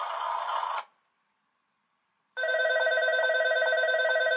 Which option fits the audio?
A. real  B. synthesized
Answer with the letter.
A